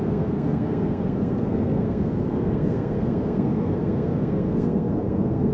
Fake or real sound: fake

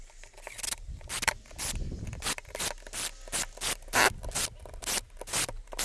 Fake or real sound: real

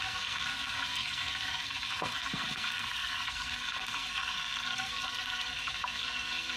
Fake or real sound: fake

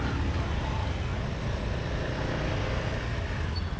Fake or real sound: real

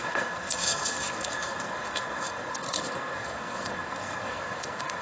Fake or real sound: fake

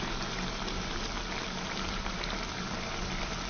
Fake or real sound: real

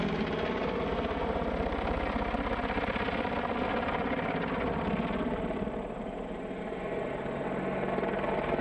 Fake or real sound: real